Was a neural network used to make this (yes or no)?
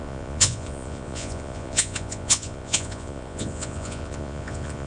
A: yes